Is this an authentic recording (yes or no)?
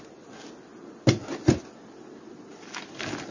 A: yes